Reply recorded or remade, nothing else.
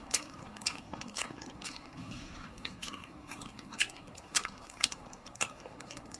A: remade